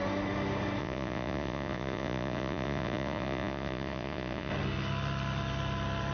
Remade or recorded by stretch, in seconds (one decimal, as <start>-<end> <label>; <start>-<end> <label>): 0.0-0.8 recorded; 0.8-4.5 remade; 4.5-6.1 recorded